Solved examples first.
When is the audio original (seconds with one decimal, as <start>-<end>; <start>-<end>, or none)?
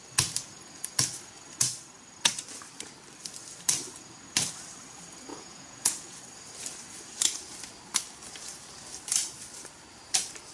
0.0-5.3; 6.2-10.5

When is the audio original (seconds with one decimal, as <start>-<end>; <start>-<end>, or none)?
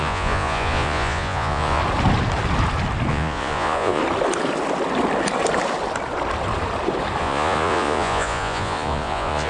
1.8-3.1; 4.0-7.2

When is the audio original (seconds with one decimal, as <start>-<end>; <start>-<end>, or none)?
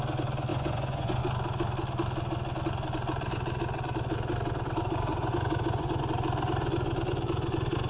0.0-0.5; 1.2-5.1; 6.0-7.9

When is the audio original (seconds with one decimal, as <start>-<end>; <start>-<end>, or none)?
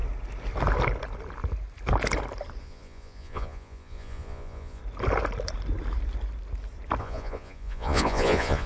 0.0-2.6; 4.8-7.0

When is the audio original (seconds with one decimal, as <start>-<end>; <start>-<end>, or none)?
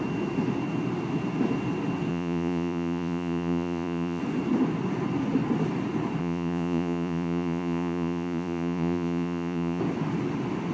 0.0-2.1; 4.2-6.2; 9.8-10.7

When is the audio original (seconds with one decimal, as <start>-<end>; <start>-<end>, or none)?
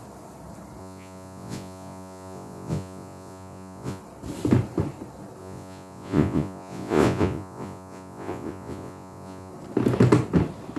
0.0-0.8; 4.0-5.4; 9.5-10.8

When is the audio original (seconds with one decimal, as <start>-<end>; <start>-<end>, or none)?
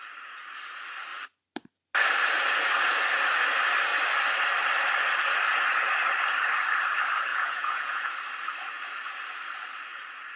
0.0-7.3; 8.1-10.4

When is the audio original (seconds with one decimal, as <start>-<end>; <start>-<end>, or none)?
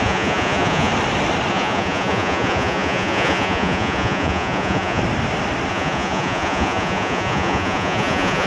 0.9-1.5; 5.0-5.7